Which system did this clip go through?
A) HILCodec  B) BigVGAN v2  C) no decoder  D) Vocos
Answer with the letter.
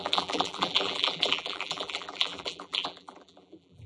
B